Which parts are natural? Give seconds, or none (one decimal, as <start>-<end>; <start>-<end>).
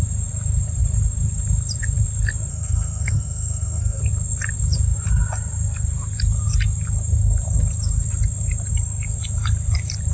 0.0-2.5; 4.0-10.1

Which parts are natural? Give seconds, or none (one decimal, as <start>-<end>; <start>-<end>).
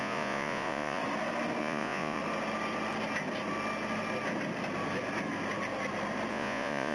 1.0-1.6; 2.2-6.3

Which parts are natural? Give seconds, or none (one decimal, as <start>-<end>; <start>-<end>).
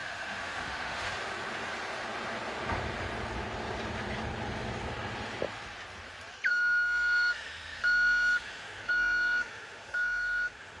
1.1-6.5